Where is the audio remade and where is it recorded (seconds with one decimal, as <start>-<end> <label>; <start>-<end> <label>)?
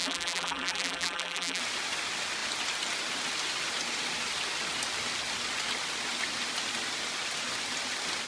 0.0-1.6 remade; 1.6-8.3 recorded